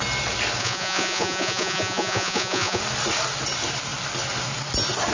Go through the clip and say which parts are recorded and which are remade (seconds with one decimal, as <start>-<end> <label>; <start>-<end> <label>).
0.0-0.6 recorded; 0.6-2.8 remade; 2.8-5.1 recorded